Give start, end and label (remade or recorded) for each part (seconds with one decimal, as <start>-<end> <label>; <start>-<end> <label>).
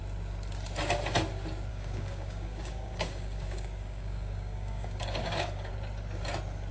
0.0-1.7 recorded; 1.7-5.7 remade; 5.7-6.7 recorded